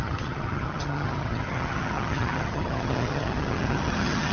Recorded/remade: remade